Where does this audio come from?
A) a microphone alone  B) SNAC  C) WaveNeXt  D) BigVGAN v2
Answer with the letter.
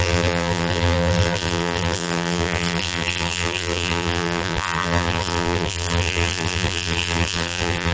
D